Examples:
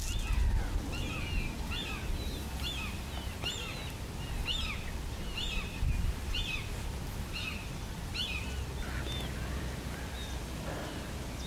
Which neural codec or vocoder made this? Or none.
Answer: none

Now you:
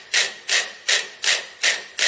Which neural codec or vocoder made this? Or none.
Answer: none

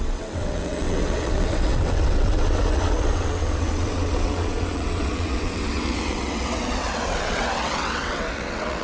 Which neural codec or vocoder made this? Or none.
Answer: vocoder, WaveNeXt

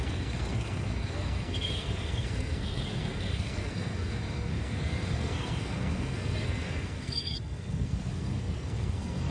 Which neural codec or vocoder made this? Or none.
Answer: codec, SNAC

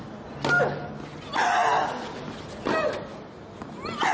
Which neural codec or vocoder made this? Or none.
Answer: none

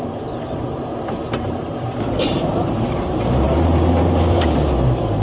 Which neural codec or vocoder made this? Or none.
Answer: vocoder, BigVGAN v2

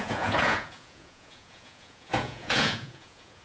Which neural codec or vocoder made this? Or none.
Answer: vocoder, Vocos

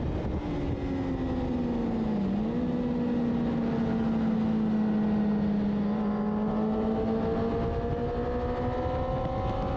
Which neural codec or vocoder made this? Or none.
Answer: none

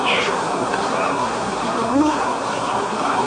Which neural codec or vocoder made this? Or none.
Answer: codec, SNAC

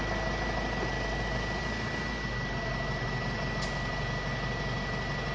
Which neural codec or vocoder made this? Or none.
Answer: none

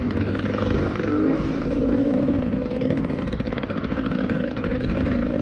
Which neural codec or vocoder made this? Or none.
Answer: codec, DAC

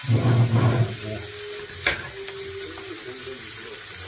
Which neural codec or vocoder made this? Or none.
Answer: none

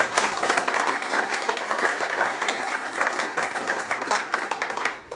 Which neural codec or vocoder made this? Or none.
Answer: codec, SNAC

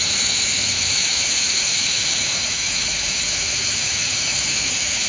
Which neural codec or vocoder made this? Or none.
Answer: autoencoder, DAC-VAE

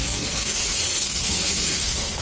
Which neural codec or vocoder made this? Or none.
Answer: codec, SNAC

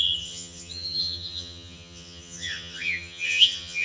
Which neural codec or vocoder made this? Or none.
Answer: vocoder, HiFi-GAN